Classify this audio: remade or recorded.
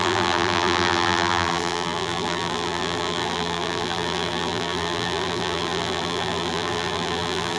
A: remade